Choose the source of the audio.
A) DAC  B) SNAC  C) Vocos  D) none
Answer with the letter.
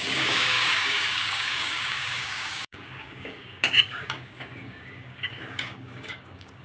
A